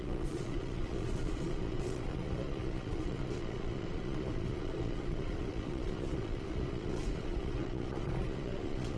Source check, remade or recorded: remade